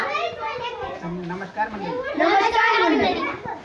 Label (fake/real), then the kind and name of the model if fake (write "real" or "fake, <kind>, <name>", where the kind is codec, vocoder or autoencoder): real